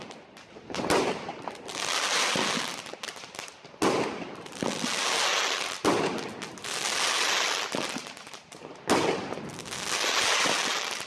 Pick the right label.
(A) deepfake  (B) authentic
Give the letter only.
B